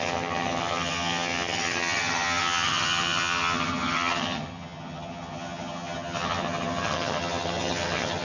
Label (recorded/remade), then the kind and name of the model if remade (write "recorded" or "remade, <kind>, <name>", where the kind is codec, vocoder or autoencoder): remade, vocoder, HiFi-GAN